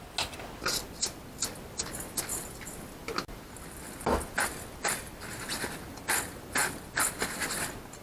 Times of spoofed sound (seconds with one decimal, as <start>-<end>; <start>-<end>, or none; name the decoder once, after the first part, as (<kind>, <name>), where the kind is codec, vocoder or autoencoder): none